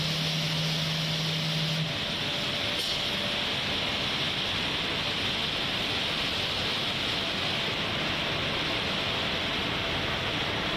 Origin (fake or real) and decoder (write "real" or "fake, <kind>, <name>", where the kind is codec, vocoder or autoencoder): real